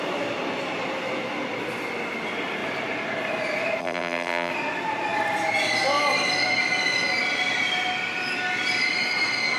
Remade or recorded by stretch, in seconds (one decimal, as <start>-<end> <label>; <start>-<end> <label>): 0.0-3.8 recorded; 3.8-4.5 remade; 4.5-9.6 recorded